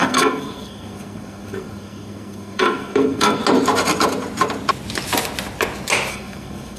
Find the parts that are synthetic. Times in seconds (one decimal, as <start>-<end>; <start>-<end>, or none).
0.0-3.4; 6.1-6.8